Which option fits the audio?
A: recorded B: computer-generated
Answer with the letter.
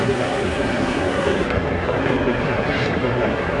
B